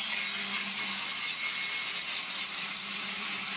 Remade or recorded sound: recorded